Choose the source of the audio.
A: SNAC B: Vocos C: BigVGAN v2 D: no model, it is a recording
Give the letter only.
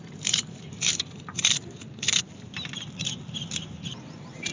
C